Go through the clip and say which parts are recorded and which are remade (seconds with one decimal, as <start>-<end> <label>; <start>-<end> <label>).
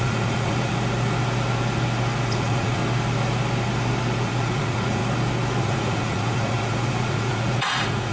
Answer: 0.0-0.7 remade; 0.7-2.3 recorded; 2.3-2.8 remade; 2.8-4.2 recorded; 4.2-5.0 remade; 5.0-5.6 recorded; 5.6-8.1 remade